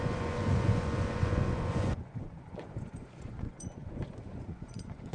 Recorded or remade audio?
remade